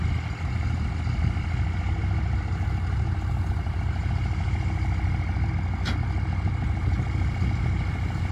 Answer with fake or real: real